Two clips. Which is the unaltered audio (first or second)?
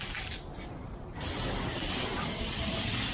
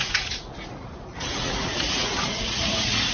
first